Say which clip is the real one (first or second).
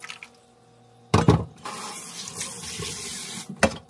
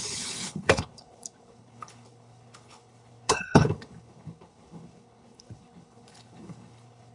first